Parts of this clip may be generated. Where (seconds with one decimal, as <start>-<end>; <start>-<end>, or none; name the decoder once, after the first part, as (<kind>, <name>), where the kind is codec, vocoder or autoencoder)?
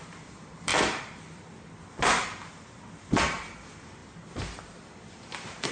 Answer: 0.0-0.7 (vocoder, BigVGAN v2); 2.7-4.0; 5.1-5.7